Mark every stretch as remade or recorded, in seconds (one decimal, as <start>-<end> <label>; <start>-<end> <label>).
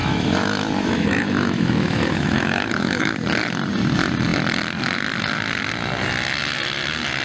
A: 0.0-3.1 remade; 3.1-7.2 recorded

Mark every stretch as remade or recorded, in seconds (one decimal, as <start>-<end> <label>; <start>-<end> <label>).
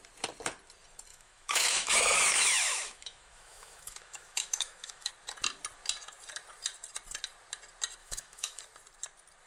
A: 0.0-1.1 recorded; 1.1-5.1 remade; 5.1-8.0 recorded; 8.0-8.6 remade; 8.6-9.5 recorded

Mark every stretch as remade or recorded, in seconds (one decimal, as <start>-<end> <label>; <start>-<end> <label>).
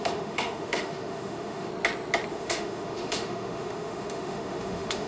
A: 0.0-1.7 remade; 1.7-2.3 recorded; 2.3-5.1 remade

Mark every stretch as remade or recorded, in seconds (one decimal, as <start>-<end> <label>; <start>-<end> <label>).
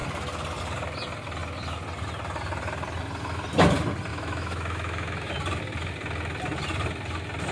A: 0.0-4.1 recorded; 4.1-5.3 remade; 5.3-7.5 recorded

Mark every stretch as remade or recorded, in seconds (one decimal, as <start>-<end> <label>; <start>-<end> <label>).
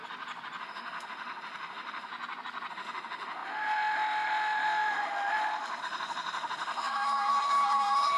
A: 0.0-0.6 recorded; 0.6-2.1 remade; 2.1-2.7 recorded; 2.7-8.2 remade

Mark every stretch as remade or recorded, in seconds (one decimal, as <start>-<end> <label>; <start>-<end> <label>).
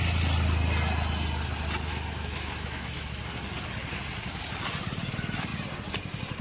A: 0.0-1.9 recorded; 1.9-3.2 remade; 3.2-6.4 recorded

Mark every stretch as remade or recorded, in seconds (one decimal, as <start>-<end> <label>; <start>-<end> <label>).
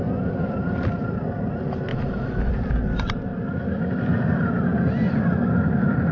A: 0.0-1.9 recorded; 1.9-2.5 remade; 2.5-6.1 recorded